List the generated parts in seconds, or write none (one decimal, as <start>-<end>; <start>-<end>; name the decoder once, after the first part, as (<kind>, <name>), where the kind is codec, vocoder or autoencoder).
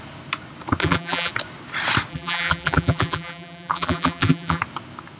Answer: 0.8-1.3 (vocoder, BigVGAN v2); 2.1-4.6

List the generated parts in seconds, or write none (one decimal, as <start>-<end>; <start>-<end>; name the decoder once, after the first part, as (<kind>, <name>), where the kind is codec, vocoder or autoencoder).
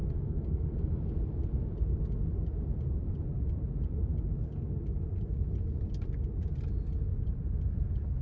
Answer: 0.0-0.9 (codec, SNAC)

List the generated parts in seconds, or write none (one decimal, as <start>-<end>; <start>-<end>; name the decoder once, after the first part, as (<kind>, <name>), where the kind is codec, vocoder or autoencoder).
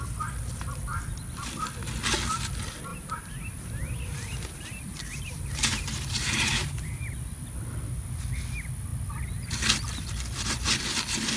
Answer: 2.9-7.0 (vocoder, BigVGAN v2)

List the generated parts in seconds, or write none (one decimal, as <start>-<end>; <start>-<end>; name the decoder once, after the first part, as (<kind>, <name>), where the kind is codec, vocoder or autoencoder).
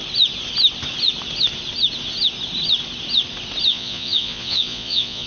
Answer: 3.7-5.3 (vocoder, Vocos)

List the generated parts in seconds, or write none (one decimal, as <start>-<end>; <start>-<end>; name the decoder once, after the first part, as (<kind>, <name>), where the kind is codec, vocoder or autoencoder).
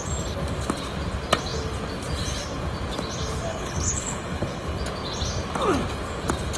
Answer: 3.5-4.8 (codec, HILCodec)